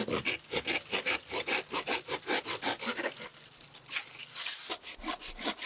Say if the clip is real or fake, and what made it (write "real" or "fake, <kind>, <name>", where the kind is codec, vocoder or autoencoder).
real